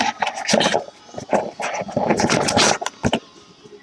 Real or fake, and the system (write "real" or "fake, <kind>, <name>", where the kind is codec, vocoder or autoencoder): real